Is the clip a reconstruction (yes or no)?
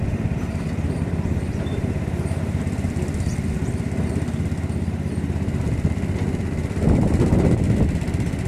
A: yes